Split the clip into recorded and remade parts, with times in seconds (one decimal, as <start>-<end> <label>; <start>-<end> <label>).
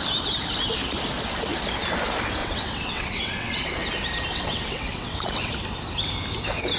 0.0-2.4 recorded; 2.4-3.7 remade; 3.7-4.3 recorded; 4.3-5.5 remade; 5.5-6.8 recorded